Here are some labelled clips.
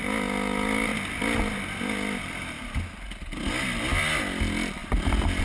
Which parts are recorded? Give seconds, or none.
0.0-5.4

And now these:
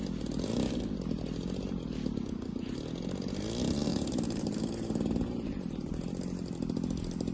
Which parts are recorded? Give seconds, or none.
0.0-3.9; 5.7-7.3

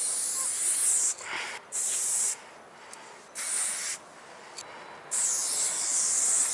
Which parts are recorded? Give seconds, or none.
0.0-6.5

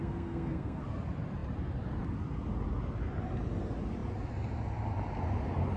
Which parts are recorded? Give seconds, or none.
0.8-5.8

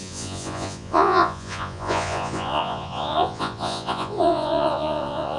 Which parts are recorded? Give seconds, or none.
none

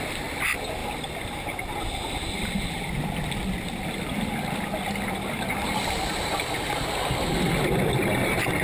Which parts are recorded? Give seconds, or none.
0.0-8.6